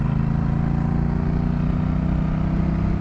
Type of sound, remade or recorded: recorded